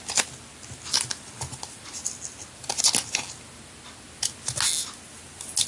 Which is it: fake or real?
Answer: real